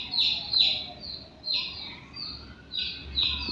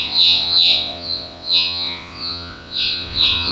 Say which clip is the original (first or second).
first